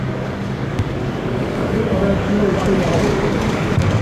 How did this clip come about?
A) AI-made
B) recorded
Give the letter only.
A